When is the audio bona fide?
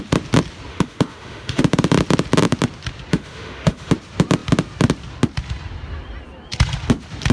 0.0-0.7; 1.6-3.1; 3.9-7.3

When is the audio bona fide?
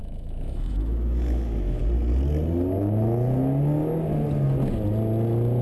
1.8-5.6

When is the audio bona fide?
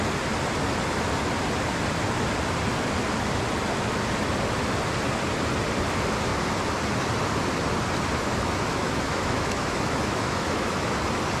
0.0-8.7; 10.9-11.4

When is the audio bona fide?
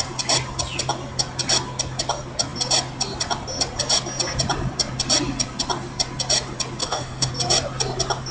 0.0-6.8; 7.3-8.3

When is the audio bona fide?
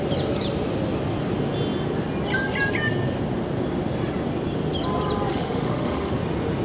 0.0-5.3; 6.1-6.6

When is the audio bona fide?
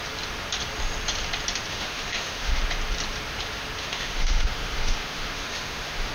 0.0-1.7; 2.6-3.8